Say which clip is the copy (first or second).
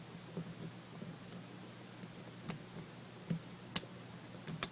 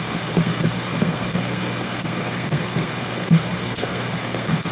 second